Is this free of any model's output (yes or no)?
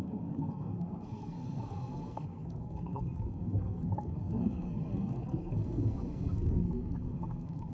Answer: no